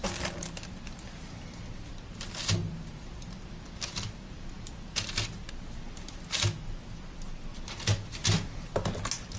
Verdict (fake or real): real